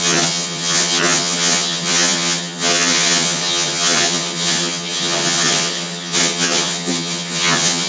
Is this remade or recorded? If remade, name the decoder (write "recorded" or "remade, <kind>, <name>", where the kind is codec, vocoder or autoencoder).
remade, vocoder, HiFi-GAN